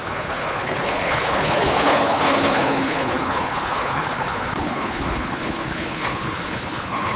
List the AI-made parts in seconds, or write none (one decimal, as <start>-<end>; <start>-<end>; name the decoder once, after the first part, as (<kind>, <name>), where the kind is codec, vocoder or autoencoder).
0.0-7.2 (codec, HILCodec)